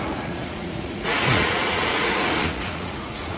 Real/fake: fake